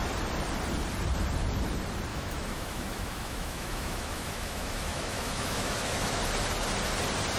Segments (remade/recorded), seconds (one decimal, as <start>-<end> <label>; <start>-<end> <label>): 0.0-2.1 recorded; 2.1-6.2 remade; 6.2-7.4 recorded